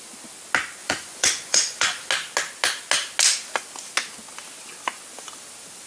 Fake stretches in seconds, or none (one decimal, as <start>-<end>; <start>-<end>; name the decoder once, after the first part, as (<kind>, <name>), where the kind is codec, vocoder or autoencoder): 0.8-2.1 (vocoder, Vocos)